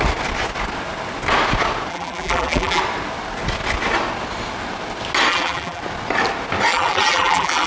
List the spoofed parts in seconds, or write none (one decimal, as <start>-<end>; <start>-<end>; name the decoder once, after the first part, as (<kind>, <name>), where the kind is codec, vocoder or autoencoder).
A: 1.9-2.8 (vocoder, BigVGAN v2); 5.3-5.8; 6.7-7.7